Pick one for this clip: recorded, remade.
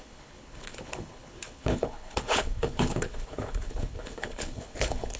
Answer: remade